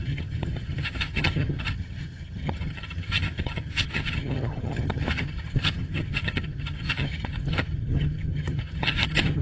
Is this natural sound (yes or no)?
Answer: no